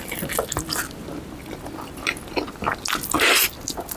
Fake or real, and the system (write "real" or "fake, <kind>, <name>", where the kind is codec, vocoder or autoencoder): real